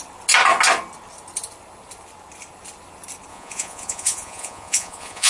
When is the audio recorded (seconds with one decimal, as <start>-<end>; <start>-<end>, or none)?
0.0-3.3